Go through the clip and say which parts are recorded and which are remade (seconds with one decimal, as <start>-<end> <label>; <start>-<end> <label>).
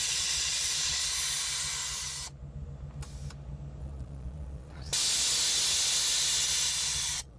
0.0-1.0 remade; 1.0-3.8 recorded; 3.8-4.9 remade; 4.9-6.7 recorded; 6.7-7.4 remade